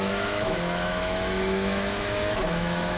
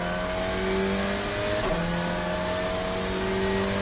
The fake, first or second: first